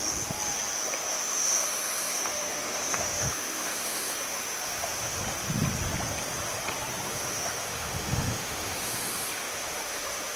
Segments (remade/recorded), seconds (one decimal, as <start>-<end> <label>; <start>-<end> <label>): 0.0-1.1 recorded; 1.1-5.2 remade; 5.2-7.1 recorded; 7.1-10.4 remade